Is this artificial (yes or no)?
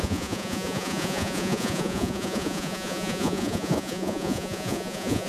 yes